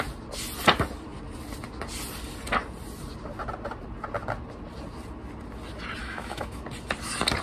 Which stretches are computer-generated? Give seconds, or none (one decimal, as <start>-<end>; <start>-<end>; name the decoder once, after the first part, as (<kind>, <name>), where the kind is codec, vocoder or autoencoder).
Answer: 6.0-6.6 (autoencoder, DAC-VAE)